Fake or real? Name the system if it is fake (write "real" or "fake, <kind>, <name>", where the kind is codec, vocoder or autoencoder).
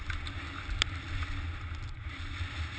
real